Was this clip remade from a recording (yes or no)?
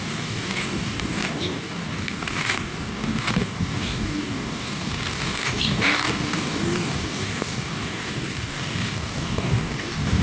yes